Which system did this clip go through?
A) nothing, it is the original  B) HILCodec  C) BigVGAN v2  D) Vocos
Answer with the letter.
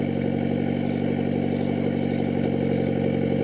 A